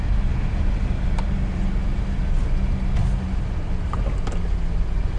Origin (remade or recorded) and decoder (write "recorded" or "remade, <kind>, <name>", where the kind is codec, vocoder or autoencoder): recorded